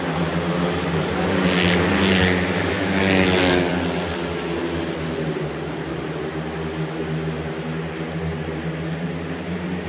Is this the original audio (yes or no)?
yes